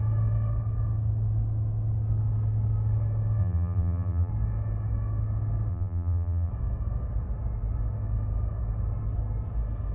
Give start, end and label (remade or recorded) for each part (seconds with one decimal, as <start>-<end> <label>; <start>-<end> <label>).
0.0-3.4 recorded; 3.4-4.3 remade; 4.3-5.7 recorded; 5.7-6.5 remade; 6.5-9.9 recorded